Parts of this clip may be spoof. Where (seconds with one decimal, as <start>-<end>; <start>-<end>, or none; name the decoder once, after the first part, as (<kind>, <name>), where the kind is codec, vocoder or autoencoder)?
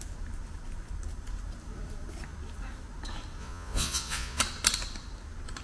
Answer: 3.4-4.4 (vocoder, Vocos)